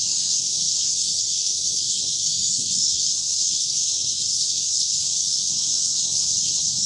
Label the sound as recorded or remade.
remade